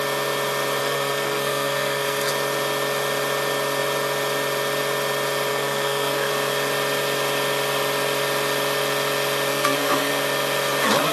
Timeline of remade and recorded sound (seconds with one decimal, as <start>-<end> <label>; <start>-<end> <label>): 0.0-0.8 recorded; 0.8-2.3 remade; 2.3-5.5 recorded; 5.5-6.3 remade; 6.3-9.5 recorded; 9.5-10.1 remade; 10.1-11.1 recorded